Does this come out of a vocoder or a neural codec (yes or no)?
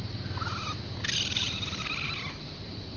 no